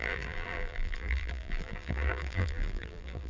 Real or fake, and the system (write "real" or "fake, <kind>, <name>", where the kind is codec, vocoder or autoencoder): fake, vocoder, BigVGAN v2